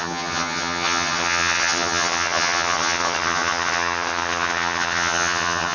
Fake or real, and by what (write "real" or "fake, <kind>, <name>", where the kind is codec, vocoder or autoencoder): fake, vocoder, HiFi-GAN